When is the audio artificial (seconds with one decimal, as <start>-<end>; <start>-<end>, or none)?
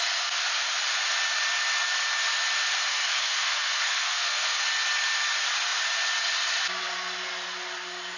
2.9-4.7